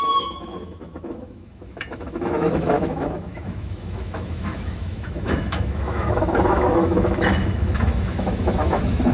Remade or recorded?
remade